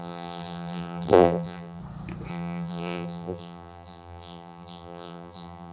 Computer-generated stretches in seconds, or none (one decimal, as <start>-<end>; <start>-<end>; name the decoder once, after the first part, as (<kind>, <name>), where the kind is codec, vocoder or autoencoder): 0.0-1.8 (vocoder, BigVGAN v2); 2.3-5.7